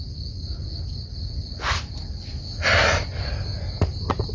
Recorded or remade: recorded